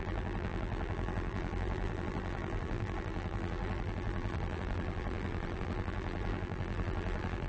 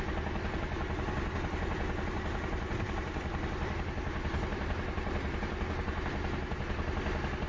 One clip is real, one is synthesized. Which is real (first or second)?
second